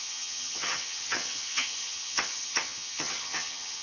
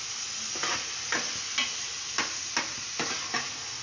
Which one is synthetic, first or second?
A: first